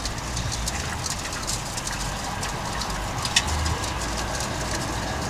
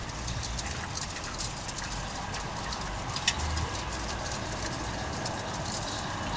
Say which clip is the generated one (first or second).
second